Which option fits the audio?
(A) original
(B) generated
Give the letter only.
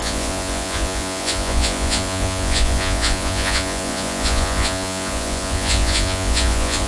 B